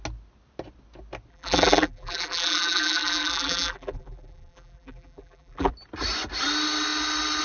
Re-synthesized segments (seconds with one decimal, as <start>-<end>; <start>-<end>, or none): 1.3-5.7